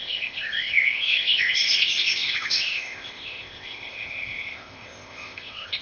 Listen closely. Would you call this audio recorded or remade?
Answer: remade